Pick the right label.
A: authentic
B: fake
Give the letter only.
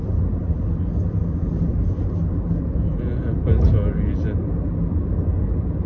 A